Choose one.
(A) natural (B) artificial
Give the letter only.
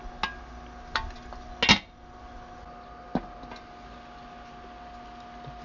A